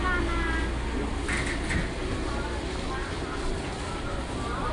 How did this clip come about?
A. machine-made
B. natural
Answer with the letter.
B